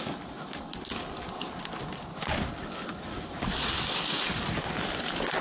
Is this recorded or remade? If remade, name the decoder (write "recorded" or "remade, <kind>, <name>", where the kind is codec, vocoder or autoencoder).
recorded